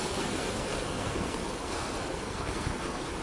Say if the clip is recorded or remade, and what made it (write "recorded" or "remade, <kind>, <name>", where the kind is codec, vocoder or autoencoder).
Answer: remade, codec, SNAC